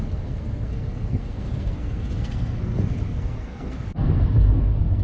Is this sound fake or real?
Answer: fake